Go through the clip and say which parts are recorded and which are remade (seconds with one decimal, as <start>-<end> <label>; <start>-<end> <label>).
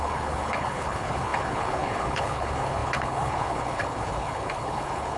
0.0-5.2 remade